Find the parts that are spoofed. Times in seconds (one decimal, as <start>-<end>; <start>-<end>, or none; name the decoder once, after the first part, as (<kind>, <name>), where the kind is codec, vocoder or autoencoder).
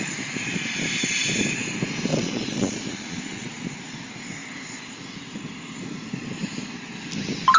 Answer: 2.1-3.5 (vocoder, Vocos)